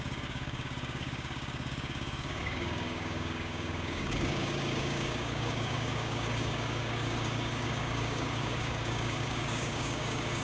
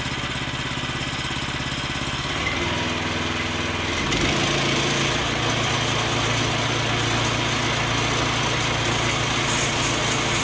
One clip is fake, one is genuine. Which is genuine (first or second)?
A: second